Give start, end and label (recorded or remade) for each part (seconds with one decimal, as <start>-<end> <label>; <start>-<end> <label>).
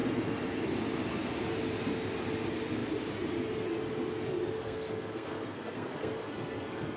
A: 0.0-4.6 recorded; 4.6-7.0 remade